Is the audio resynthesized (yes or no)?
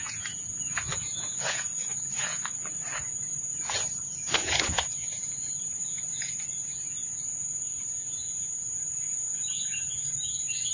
yes